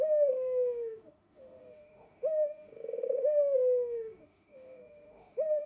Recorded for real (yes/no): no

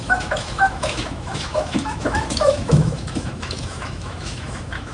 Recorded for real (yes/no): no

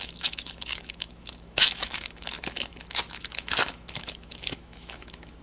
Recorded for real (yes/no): no